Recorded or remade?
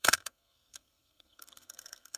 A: remade